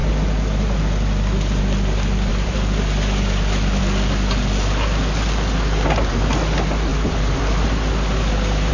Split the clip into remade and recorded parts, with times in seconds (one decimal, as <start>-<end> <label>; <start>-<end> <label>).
0.0-2.3 recorded; 2.3-3.8 remade; 3.8-6.9 recorded; 6.9-8.7 remade